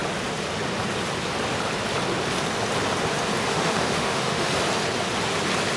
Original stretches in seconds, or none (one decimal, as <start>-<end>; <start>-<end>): 0.0-3.5; 4.5-5.8